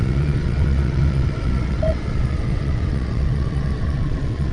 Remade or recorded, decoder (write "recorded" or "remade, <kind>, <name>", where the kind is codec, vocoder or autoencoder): remade, vocoder, WaveNeXt